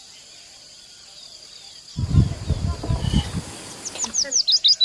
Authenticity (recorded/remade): recorded